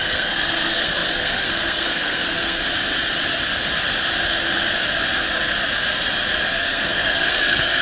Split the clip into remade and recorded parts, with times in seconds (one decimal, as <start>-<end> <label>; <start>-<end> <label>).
0.0-2.6 remade; 2.6-6.5 recorded; 6.5-7.8 remade